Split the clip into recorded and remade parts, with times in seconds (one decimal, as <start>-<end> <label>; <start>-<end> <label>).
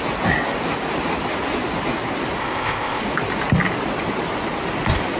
0.0-2.4 recorded; 2.4-3.0 remade; 3.0-5.2 recorded